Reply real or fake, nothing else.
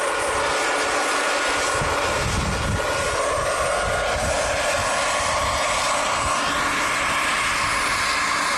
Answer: real